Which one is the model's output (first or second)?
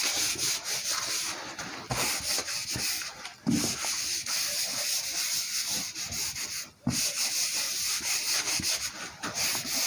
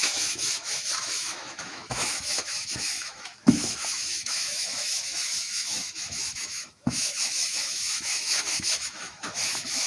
second